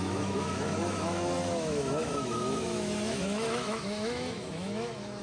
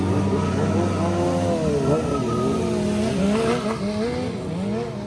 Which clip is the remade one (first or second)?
first